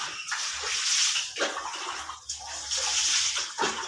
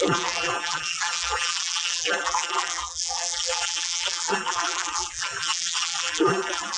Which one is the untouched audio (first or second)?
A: first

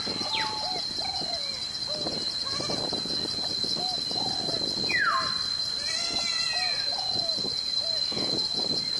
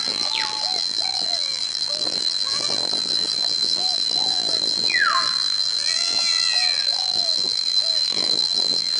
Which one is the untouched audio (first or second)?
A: first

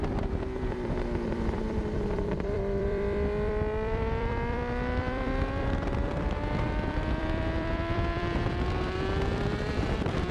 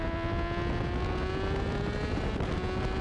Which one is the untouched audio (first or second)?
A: second